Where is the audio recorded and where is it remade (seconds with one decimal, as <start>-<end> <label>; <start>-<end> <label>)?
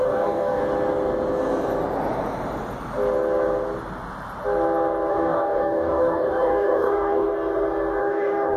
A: 0.0-0.6 remade; 0.6-5.1 recorded; 5.1-7.3 remade; 7.3-8.0 recorded; 8.0-8.6 remade